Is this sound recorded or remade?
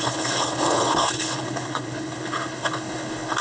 remade